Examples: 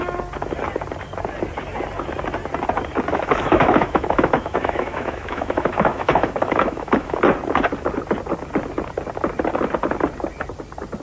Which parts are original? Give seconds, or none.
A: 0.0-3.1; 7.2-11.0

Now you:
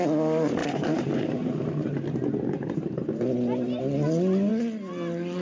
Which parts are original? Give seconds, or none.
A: 0.0-0.6; 3.8-5.4

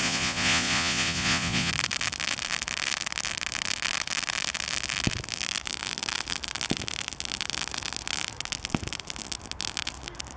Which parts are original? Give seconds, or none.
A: 1.7-10.4

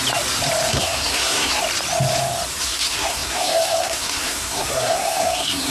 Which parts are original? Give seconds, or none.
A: 0.0-0.7; 1.6-2.6

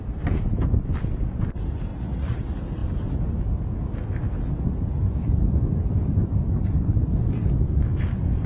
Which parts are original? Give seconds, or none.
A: 0.0-1.9; 2.4-8.5

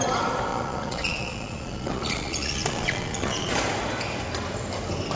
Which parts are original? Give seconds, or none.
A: 0.0-0.5; 3.5-5.2

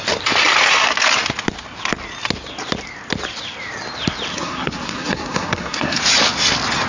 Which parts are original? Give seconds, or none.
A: 0.0-4.3; 6.0-6.9

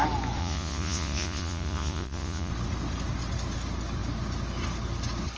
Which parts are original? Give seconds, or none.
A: 0.0-0.4; 2.5-5.4